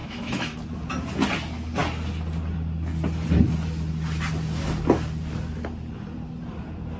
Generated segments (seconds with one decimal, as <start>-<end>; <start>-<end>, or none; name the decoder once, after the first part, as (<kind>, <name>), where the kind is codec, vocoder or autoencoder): 0.0-0.6 (autoencoder, DAC-VAE)